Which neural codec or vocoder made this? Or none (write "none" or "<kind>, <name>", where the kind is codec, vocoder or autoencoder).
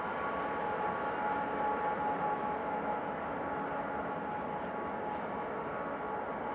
none